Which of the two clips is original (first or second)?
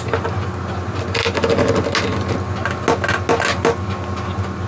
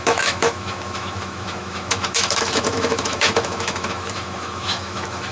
first